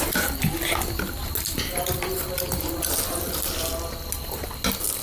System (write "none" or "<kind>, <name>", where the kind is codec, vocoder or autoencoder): none